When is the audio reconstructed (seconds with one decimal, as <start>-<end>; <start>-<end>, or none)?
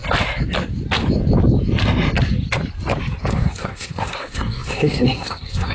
3.3-5.7